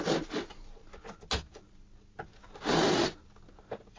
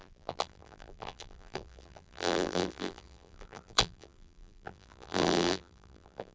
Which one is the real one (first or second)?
first